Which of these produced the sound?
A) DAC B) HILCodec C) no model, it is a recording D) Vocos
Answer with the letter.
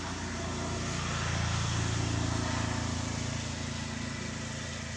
C